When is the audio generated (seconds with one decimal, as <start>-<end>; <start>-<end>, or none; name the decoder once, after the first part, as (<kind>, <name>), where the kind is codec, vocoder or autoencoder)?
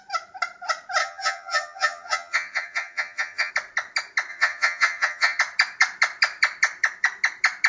1.0-3.5 (vocoder, HiFi-GAN); 4.3-5.4